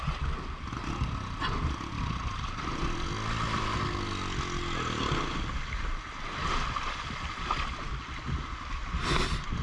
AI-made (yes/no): no